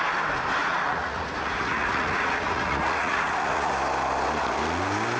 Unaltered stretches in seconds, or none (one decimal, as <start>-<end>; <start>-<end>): 0.0-0.6; 3.7-5.2